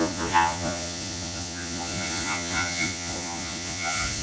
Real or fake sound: fake